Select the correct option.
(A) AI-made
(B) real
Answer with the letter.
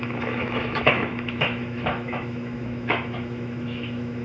A